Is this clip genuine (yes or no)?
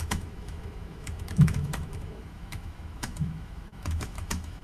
no